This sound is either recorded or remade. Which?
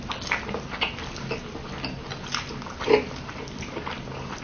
recorded